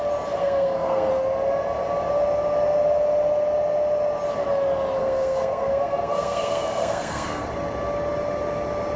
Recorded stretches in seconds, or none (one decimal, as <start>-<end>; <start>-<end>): 0.0-0.4; 1.1-5.0; 7.4-9.0